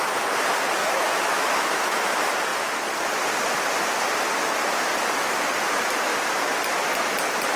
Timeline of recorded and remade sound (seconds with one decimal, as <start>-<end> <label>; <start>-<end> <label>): 0.0-0.8 recorded; 0.8-2.1 remade; 2.1-7.6 recorded